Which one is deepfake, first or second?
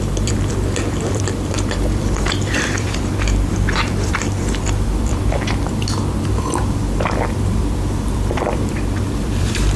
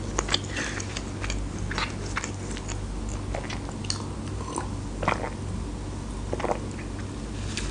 first